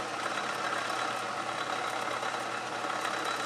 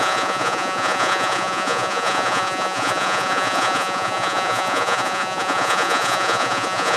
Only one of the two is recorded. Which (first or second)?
first